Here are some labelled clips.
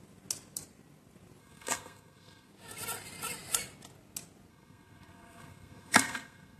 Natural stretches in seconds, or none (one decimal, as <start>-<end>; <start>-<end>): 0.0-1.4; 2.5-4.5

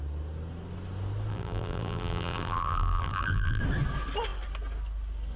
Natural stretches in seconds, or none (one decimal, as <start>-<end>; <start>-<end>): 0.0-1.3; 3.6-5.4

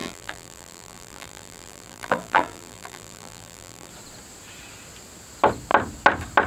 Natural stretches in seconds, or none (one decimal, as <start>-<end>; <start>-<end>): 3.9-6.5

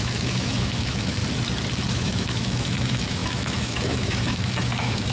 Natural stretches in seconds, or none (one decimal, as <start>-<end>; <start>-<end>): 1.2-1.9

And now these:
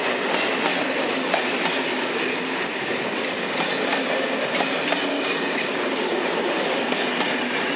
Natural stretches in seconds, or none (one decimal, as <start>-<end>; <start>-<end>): 0.0-1.9; 3.2-5.1; 7.0-7.8

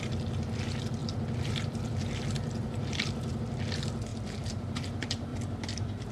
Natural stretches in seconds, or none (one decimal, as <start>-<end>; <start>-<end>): 0.0-1.0; 3.4-4.1; 4.8-5.3